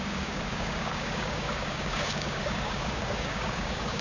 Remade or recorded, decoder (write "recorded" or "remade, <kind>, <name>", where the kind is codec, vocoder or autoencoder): remade, codec, DAC